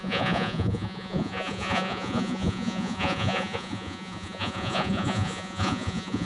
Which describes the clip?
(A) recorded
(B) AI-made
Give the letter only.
B